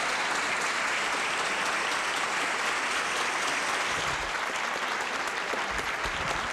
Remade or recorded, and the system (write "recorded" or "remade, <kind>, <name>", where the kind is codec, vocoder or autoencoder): recorded